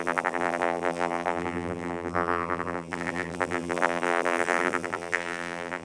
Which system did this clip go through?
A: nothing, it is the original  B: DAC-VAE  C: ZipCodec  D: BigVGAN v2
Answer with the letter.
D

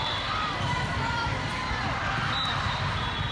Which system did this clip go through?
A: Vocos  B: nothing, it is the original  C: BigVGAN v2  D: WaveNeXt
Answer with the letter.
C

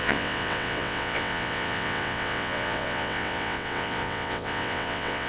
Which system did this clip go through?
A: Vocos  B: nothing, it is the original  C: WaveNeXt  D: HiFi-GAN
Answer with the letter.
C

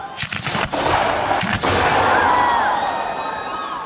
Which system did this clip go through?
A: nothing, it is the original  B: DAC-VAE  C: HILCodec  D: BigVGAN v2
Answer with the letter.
A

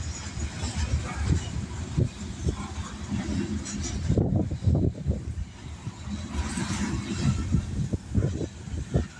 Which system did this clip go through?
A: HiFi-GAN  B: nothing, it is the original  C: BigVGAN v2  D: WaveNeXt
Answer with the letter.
B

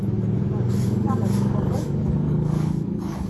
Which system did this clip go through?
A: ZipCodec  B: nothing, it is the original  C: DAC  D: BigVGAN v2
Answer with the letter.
C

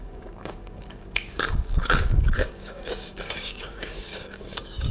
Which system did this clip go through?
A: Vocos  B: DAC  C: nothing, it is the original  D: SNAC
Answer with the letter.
B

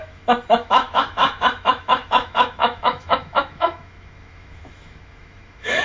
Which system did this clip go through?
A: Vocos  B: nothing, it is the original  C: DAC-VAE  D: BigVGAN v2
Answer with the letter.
C